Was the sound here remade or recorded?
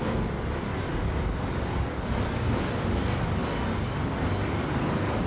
recorded